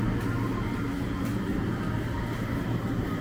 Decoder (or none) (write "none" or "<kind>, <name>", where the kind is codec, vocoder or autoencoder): none